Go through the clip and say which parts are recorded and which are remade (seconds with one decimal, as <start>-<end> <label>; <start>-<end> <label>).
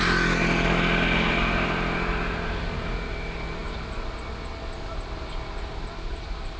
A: 0.0-6.6 recorded